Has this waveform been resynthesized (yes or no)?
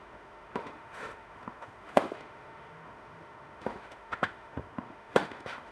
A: yes